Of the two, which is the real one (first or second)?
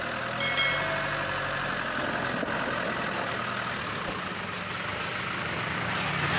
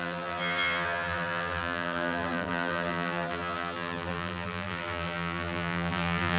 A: first